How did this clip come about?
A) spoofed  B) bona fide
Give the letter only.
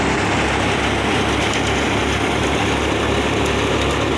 B